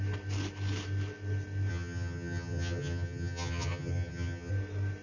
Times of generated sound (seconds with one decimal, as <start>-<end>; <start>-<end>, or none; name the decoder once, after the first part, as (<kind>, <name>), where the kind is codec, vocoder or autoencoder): 1.7-4.5 (vocoder, HiFi-GAN)